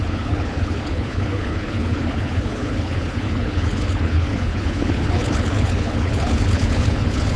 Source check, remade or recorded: remade